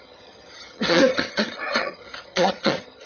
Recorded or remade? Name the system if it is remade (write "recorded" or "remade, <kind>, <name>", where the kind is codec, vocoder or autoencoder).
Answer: remade, vocoder, HiFi-GAN